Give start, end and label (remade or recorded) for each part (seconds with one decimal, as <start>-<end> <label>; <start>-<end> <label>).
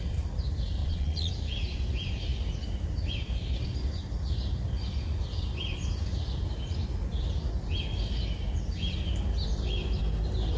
0.0-0.8 recorded; 0.8-1.3 remade; 1.3-10.6 recorded